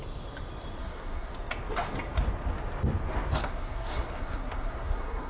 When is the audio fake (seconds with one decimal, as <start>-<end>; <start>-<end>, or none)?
0.8-1.3; 3.4-5.3